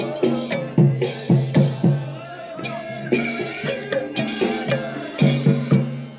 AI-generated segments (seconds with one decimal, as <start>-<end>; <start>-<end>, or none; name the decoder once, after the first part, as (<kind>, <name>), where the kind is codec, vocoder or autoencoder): 0.8-4.0 (vocoder, Vocos)